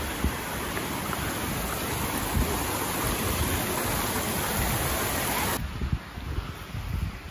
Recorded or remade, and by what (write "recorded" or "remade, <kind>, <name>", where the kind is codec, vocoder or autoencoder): recorded